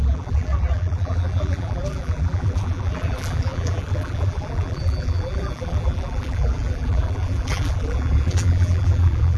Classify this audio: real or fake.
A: fake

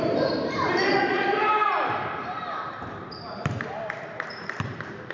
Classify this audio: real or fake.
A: fake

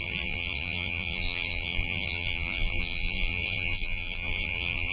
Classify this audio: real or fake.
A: fake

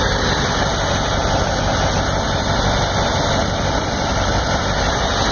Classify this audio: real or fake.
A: real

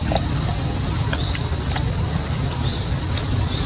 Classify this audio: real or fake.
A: real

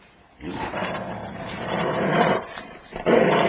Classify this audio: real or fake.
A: fake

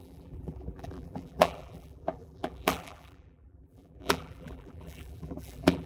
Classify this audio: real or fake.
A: fake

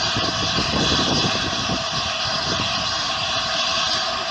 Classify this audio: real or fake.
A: fake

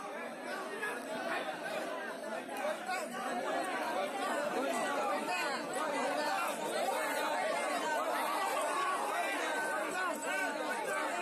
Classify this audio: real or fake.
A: real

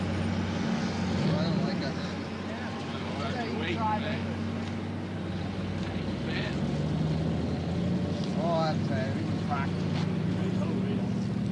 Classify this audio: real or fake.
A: real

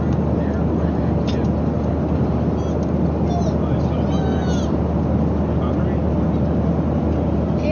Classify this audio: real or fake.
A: real